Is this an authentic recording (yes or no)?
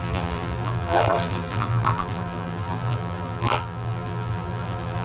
no